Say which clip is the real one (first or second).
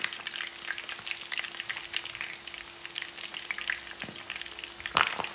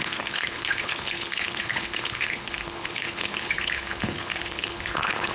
first